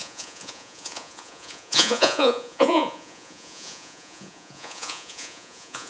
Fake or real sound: fake